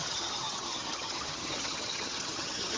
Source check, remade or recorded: remade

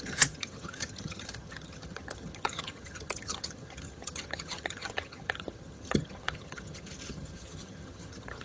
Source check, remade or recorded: remade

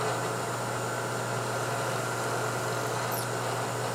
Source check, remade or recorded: recorded